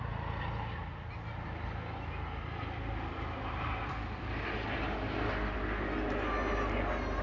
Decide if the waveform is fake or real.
real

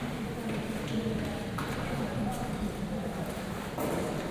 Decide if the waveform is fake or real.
real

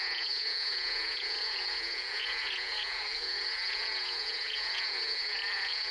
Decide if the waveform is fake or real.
fake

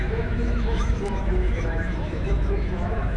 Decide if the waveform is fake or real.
fake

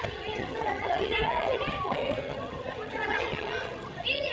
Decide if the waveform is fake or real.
fake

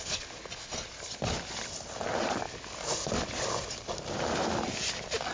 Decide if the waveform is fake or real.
real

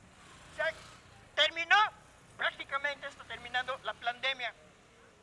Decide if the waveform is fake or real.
real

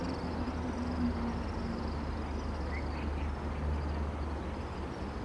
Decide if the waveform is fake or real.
real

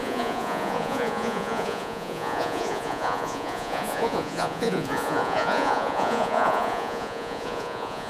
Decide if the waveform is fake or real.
fake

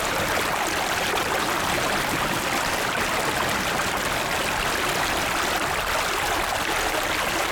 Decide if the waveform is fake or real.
real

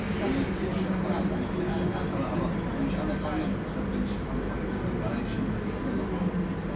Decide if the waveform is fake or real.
real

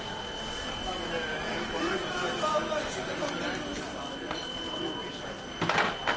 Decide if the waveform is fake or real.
real